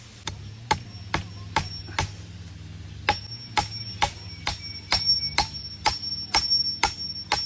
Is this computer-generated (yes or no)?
no